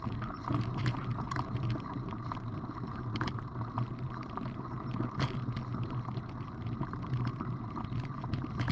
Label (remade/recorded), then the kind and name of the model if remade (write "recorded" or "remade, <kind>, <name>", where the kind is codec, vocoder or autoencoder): remade, vocoder, BigVGAN v2